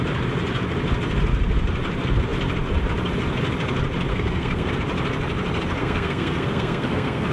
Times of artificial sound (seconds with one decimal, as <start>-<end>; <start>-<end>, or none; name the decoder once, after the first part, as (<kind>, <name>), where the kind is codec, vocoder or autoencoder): 4.1-4.7 (codec, SNAC); 5.8-7.3